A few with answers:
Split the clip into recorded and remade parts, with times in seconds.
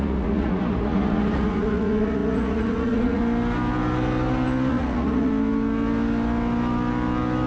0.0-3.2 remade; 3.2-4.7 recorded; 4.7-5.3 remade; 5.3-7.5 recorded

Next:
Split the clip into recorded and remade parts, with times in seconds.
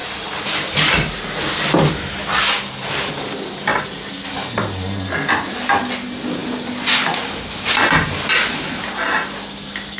0.0-1.9 remade; 1.9-10.0 recorded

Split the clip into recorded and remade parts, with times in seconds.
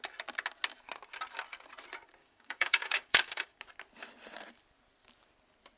0.0-2.2 recorded; 2.2-3.6 remade; 3.6-5.8 recorded